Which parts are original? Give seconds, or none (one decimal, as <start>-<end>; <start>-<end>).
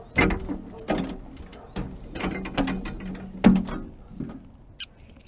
0.0-5.3